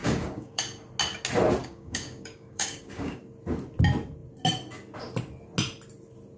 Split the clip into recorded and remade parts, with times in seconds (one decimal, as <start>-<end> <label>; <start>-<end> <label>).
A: 0.0-0.6 remade; 0.6-1.6 recorded; 1.6-3.2 remade; 3.2-6.4 recorded